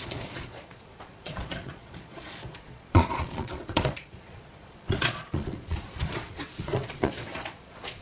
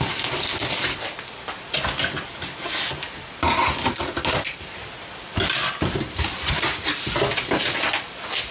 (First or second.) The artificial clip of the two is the first